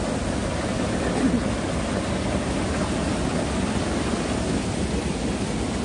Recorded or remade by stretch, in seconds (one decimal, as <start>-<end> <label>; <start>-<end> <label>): 0.0-5.8 recorded